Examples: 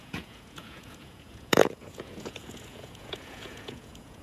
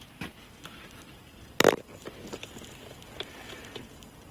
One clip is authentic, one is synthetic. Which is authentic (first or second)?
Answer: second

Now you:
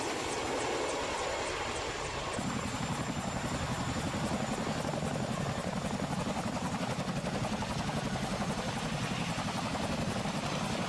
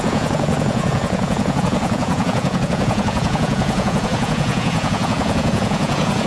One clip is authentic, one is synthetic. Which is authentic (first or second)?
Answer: first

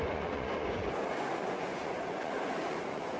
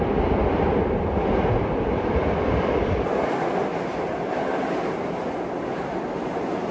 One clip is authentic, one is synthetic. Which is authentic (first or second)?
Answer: second